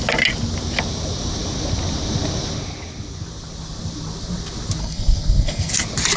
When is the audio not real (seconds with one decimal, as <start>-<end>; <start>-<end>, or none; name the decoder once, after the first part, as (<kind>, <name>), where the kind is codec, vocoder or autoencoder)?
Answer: 4.8-5.7 (codec, SNAC)